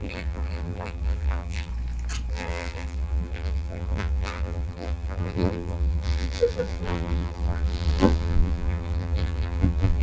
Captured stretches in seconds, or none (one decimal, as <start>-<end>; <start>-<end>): 1.7-2.3